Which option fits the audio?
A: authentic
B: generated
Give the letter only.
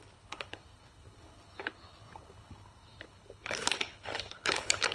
B